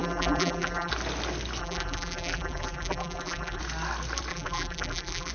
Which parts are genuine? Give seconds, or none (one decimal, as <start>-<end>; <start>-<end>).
0.9-1.6; 3.6-4.3